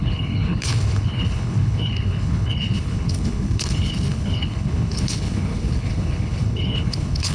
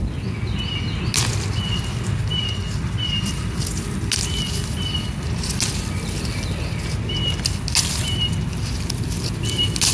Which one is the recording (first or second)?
second